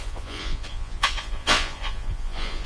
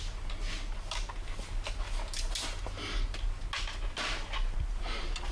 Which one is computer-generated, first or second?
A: first